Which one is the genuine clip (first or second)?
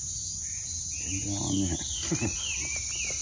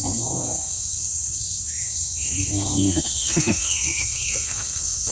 first